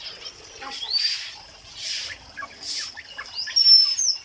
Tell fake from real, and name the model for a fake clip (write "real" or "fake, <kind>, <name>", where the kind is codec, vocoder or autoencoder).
real